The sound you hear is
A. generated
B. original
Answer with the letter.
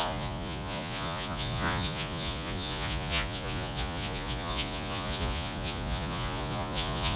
A